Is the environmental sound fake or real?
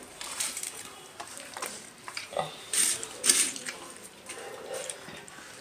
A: fake